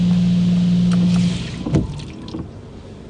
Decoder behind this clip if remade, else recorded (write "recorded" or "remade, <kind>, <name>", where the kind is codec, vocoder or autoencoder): recorded